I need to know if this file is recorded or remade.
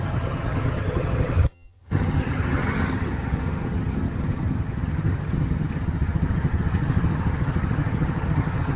remade